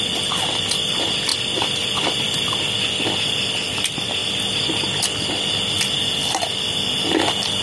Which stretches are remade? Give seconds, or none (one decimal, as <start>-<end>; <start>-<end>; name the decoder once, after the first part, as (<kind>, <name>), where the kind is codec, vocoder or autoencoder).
none